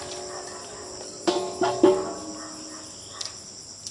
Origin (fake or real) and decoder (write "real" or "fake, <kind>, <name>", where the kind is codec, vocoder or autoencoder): real